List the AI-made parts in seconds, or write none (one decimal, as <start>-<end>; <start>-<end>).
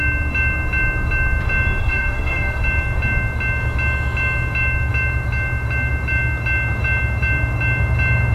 1.8-2.6